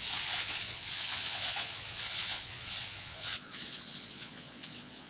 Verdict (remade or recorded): remade